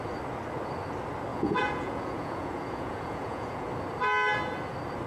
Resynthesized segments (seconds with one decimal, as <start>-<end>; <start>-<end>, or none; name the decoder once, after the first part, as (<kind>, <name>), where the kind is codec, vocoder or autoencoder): 1.3-3.7 (vocoder, Vocos)